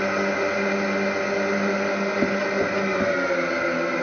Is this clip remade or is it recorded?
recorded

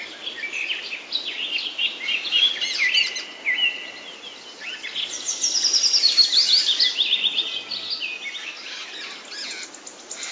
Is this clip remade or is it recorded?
recorded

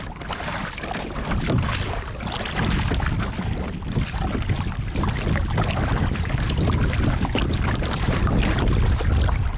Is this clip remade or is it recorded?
recorded